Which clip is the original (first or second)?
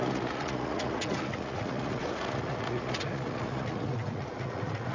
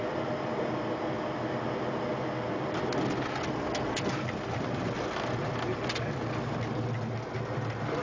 second